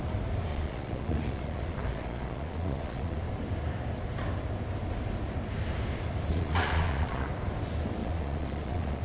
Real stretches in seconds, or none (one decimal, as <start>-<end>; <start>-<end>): 0.0-0.5; 3.2-6.3; 7.3-8.0

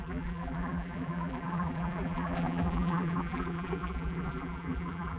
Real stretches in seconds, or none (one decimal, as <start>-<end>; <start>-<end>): none

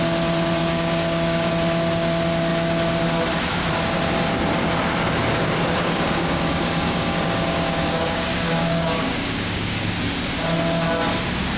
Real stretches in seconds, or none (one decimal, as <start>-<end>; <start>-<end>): 0.0-0.6; 1.5-5.2; 9.8-11.6

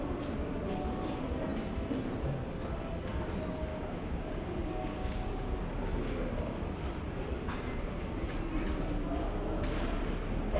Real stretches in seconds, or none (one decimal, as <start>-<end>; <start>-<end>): 0.0-3.7; 5.6-10.6

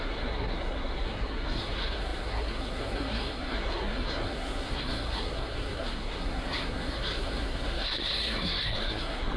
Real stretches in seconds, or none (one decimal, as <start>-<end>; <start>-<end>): none

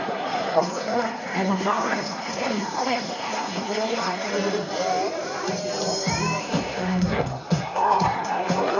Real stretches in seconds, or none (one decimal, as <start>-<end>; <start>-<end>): 4.3-6.4

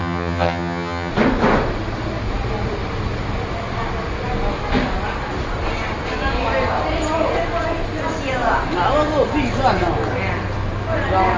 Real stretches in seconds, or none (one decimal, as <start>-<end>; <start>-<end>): 1.1-11.4